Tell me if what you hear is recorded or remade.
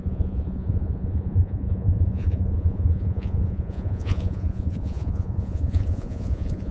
remade